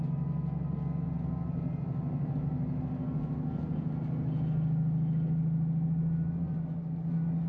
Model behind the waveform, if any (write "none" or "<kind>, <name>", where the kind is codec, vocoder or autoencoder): none